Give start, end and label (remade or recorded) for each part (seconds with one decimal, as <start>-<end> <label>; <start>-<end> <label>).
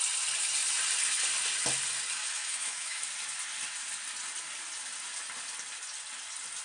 0.0-2.2 recorded; 2.2-3.0 remade; 3.0-6.6 recorded